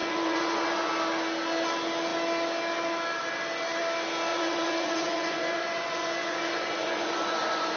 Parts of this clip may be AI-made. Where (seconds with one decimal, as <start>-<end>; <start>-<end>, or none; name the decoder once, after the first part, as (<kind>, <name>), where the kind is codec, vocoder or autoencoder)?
0.0-0.9 (vocoder, Vocos); 4.3-7.8